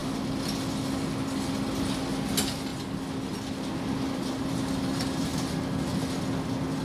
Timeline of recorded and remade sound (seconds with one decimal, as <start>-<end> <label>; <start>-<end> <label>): 0.0-6.8 recorded